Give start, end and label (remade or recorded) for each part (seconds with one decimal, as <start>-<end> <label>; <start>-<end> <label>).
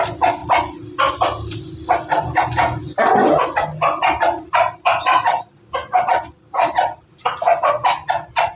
0.0-8.6 recorded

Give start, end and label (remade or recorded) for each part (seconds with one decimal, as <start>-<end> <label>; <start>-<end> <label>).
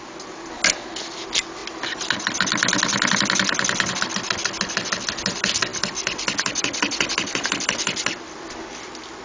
0.0-5.7 recorded; 5.7-9.2 remade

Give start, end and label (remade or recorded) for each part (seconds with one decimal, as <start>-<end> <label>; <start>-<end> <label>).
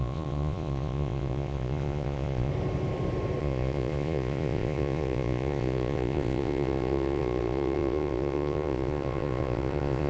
0.0-2.5 remade; 2.5-3.4 recorded; 3.4-10.1 remade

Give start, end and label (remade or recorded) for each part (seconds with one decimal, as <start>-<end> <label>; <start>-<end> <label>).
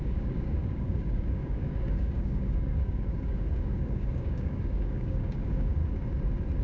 0.0-5.8 remade; 5.8-6.6 recorded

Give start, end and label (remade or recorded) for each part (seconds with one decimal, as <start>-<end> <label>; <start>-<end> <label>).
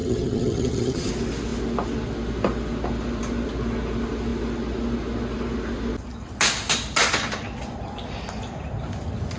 0.0-1.1 remade; 1.1-9.4 recorded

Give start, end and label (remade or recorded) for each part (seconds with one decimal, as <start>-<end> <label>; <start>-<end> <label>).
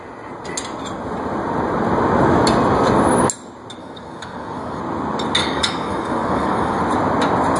0.0-3.8 recorded; 3.8-4.8 remade; 4.8-5.4 recorded; 5.4-6.8 remade; 6.8-7.6 recorded